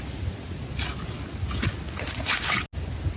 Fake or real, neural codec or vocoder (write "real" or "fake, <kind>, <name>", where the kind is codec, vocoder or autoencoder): real